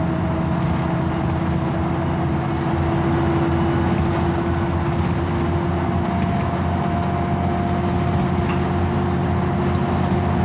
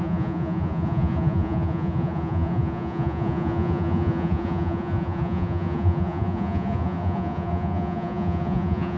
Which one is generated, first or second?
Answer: second